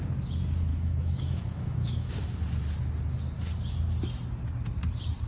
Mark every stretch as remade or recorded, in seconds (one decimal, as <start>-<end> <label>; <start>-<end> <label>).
0.0-0.7 recorded; 0.7-2.1 remade; 2.1-5.3 recorded